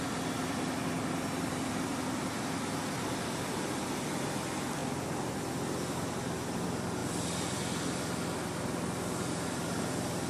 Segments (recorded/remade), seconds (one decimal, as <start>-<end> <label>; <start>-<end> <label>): 0.0-10.3 recorded